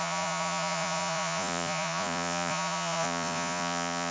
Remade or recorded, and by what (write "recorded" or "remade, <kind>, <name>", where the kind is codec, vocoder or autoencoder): remade, vocoder, Vocos